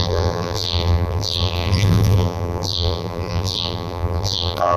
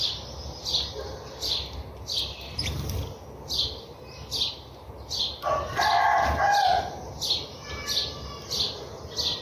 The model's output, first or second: first